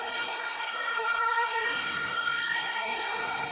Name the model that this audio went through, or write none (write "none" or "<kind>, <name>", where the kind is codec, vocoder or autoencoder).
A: codec, SNAC